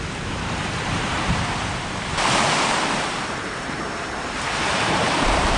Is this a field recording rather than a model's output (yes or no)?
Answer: no